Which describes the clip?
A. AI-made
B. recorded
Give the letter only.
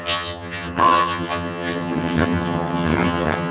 A